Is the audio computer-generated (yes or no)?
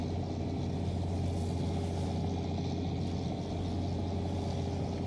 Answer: no